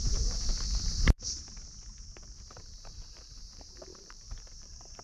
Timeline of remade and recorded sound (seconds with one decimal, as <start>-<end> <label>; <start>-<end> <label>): 0.0-0.5 remade; 0.5-2.3 recorded; 2.3-5.0 remade